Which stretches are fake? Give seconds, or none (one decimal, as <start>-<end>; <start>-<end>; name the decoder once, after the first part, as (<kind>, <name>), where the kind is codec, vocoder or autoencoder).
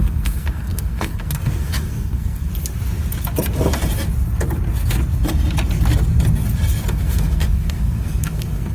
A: 0.0-2.5 (codec, SNAC); 6.9-8.7